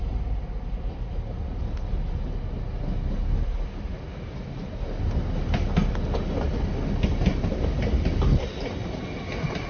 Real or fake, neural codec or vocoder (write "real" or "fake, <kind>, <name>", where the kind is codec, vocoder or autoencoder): real